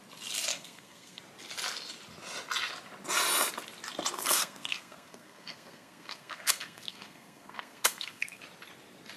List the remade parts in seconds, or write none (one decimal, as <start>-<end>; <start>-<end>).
0.5-1.2; 4.2-8.4